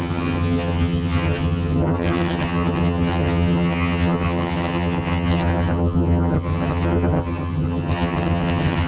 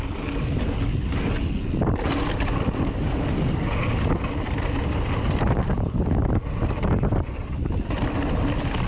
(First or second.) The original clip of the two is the second